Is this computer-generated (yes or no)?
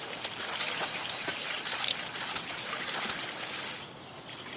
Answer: no